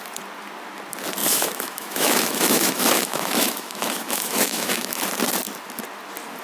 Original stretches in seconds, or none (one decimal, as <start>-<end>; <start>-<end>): 0.0-1.2; 5.0-6.4